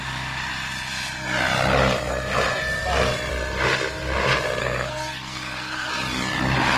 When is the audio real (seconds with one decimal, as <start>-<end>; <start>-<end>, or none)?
0.0-4.6; 5.9-6.8